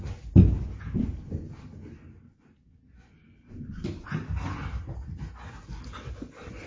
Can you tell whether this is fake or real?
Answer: real